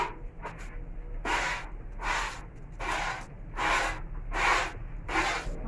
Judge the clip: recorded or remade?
recorded